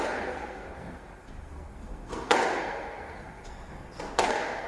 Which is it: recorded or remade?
remade